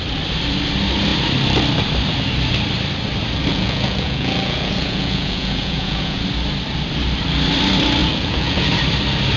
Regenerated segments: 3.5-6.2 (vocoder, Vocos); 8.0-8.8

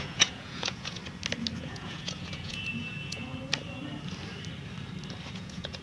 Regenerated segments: 0.0-1.0 (vocoder, Vocos); 1.6-3.3; 5.3-5.8

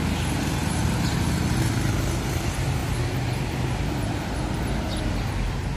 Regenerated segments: none

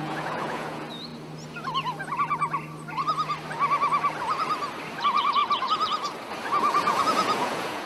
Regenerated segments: 0.0-1.1 (vocoder, Vocos); 5.0-5.4; 6.5-7.9

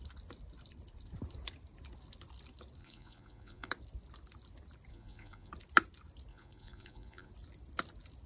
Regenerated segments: 2.8-3.7 (vocoder, Vocos); 4.9-5.5; 6.3-7.3

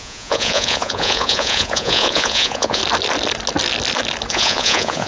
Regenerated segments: 0.0-2.8 (vocoder, Vocos); 4.3-5.1

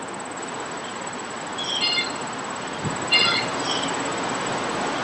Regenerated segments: 0.8-1.4 (vocoder, Vocos)

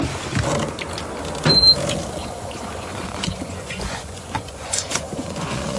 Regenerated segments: 2.2-5.8 (vocoder, Vocos)